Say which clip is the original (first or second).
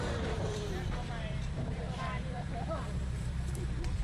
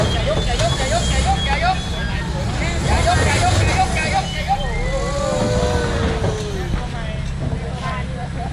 second